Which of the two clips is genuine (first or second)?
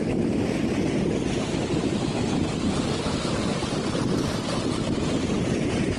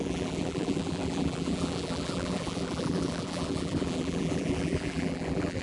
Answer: first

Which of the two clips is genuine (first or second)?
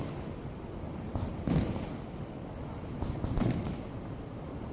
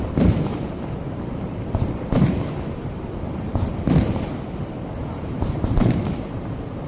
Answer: first